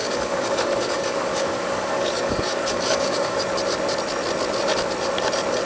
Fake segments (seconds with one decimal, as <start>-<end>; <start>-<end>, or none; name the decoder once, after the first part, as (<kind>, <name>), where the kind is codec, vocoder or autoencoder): 0.0-3.4 (codec, DAC)